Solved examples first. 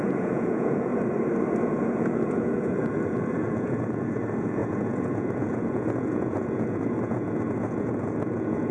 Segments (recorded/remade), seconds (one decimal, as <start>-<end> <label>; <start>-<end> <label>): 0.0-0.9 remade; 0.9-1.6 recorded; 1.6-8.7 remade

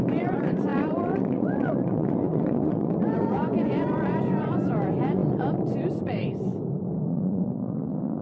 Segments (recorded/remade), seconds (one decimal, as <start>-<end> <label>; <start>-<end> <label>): 0.0-6.5 remade; 6.5-7.1 recorded; 7.1-8.2 remade

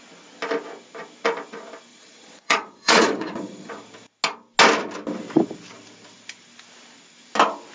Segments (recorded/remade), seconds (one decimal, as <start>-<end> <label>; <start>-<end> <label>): 0.0-1.9 recorded; 1.9-3.7 remade; 3.7-7.7 recorded

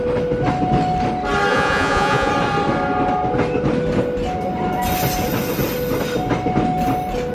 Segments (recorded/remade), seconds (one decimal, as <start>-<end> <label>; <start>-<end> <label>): 0.0-1.5 recorded; 1.5-2.3 remade; 2.3-7.3 recorded

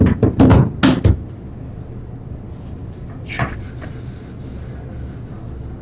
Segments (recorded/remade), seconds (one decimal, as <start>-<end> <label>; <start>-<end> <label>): 0.0-5.8 recorded

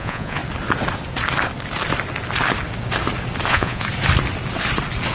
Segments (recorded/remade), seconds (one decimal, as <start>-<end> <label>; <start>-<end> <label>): 0.0-0.4 remade; 0.4-3.5 recorded; 3.5-3.9 remade; 3.9-5.1 recorded